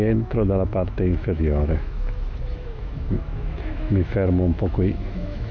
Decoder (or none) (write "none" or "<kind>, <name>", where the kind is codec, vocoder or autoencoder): autoencoder, DAC-VAE